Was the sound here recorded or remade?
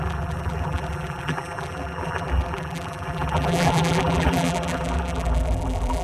remade